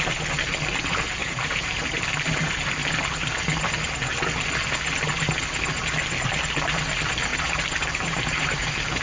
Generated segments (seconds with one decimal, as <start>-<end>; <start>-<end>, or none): 1.2-2.9; 7.3-9.0